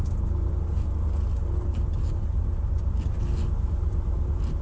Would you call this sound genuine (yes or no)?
yes